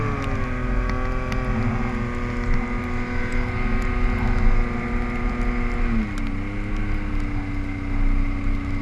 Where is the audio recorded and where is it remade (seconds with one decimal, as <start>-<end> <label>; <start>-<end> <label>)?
0.0-8.8 recorded